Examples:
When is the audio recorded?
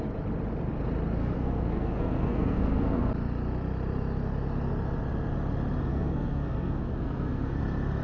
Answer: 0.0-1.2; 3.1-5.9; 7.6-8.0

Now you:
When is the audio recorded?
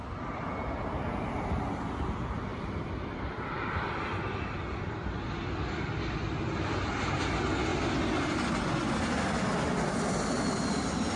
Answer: 0.0-2.5; 3.9-11.2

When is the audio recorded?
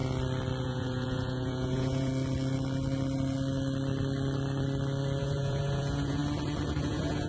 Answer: 0.0-0.6; 2.1-5.2; 6.2-6.8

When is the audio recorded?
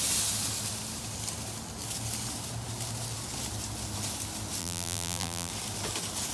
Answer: 0.0-4.6; 5.5-6.3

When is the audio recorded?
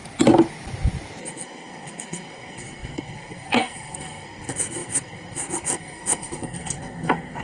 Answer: 0.0-1.2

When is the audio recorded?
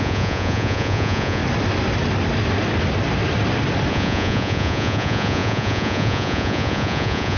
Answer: 1.4-3.9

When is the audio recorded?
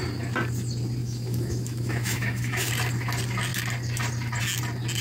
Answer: 0.0-1.0; 2.7-5.0